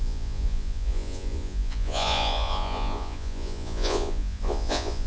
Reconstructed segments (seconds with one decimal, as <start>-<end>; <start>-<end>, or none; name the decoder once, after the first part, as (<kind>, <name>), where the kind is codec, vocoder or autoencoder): 0.0-5.1 (vocoder, Vocos)

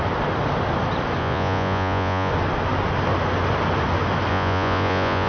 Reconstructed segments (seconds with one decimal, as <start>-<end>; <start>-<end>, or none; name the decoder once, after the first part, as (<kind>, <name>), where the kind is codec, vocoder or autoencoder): 1.2-2.3 (vocoder, Vocos); 4.3-5.3